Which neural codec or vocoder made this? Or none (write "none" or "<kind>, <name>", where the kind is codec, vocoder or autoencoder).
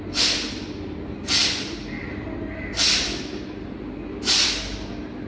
none